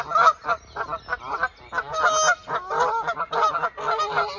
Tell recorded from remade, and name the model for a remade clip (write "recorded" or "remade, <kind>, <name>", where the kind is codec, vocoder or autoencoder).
recorded